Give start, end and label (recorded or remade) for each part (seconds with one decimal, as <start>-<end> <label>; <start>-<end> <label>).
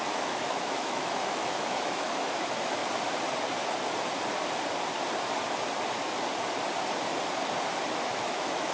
0.0-2.8 remade; 2.8-8.0 recorded; 8.0-8.7 remade